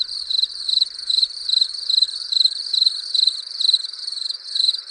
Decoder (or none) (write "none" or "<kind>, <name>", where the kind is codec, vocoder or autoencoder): vocoder, BigVGAN v2